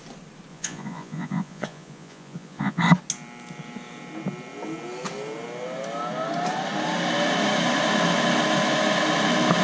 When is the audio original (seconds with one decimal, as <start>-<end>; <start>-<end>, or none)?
0.0-0.5; 2.8-9.6